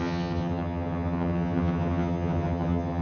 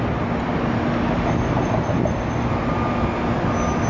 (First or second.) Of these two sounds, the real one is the second